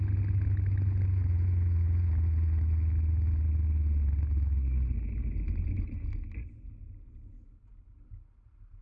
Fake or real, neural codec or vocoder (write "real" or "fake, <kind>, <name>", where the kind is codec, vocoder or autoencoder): real